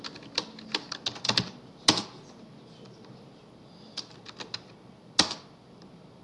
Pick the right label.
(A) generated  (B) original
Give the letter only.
B